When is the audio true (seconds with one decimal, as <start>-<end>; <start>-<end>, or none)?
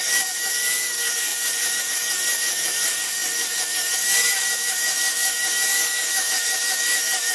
none